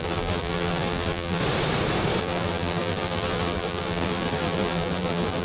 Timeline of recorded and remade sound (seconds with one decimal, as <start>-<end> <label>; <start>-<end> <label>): 0.0-1.4 remade; 1.4-2.2 recorded; 2.2-5.4 remade